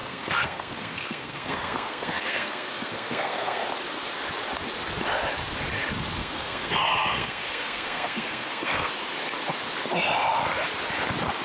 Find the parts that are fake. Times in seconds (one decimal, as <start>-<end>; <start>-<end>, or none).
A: 0.0-3.7; 6.2-8.9

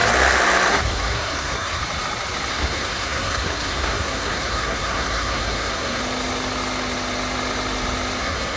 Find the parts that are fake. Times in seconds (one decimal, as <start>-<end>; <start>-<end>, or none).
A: 0.7-1.8; 2.5-6.0; 8.2-8.6

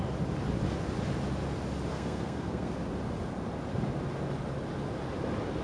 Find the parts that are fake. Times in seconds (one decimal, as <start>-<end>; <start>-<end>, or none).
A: 1.9-2.7